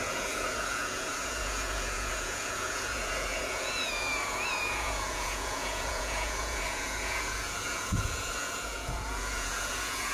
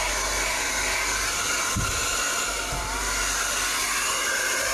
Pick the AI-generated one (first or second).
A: first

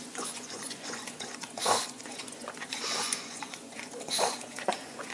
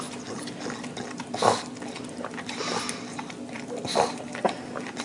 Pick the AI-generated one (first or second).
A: first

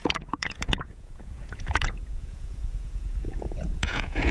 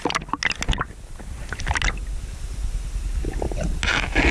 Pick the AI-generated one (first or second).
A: first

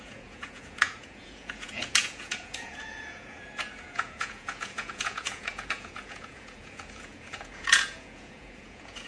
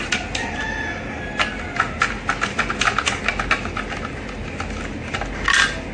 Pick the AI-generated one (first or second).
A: first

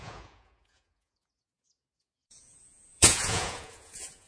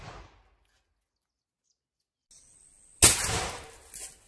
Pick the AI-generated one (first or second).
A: first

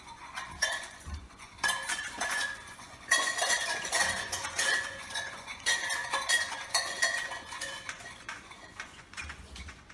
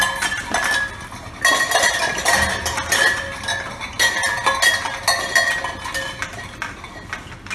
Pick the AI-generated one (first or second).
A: first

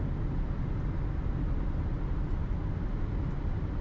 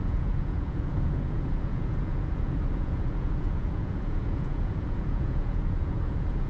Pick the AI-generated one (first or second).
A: second